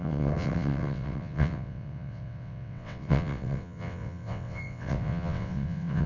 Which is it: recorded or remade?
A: remade